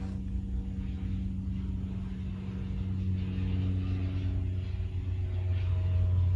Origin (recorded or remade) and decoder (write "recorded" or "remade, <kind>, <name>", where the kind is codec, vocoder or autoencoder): recorded